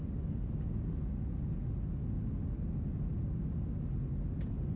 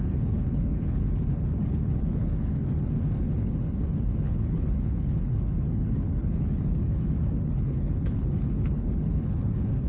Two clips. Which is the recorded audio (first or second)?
first